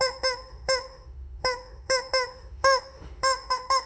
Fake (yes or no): yes